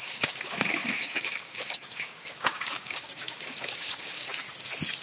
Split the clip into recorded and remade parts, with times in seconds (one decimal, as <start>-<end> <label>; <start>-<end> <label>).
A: 0.0-4.3 remade; 4.3-5.0 recorded